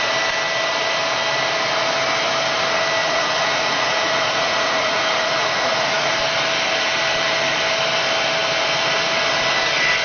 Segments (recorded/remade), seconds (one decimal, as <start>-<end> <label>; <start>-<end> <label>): 0.0-3.0 recorded; 3.0-6.1 remade; 6.1-10.0 recorded